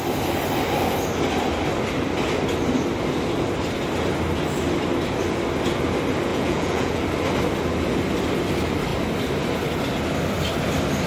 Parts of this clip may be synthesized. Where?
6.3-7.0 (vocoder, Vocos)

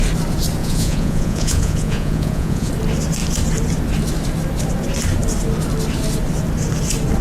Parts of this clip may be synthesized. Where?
0.6-2.7 (vocoder, Vocos)